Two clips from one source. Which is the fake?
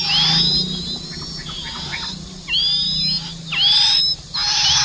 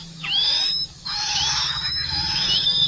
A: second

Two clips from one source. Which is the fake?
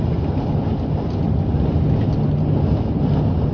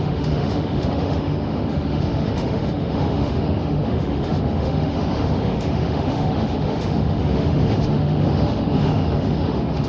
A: second